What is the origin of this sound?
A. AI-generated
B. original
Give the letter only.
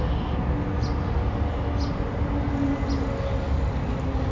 B